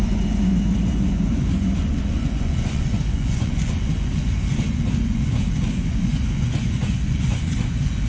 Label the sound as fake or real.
fake